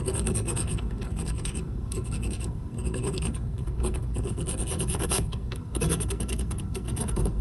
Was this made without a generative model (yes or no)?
no